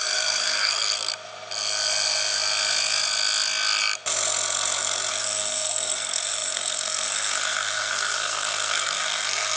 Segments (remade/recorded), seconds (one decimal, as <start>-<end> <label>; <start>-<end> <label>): 0.0-1.1 remade; 1.1-5.1 recorded; 5.1-9.6 remade